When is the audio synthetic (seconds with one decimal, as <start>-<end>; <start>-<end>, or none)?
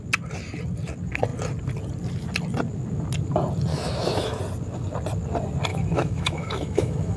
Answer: 3.7-4.4; 5.7-7.2